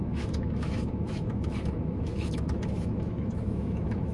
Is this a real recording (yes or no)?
no